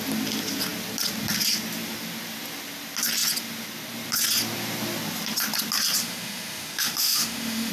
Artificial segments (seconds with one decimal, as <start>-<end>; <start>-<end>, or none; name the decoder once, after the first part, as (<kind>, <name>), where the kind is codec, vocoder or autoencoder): 6.0-7.7 (autoencoder, DAC-VAE)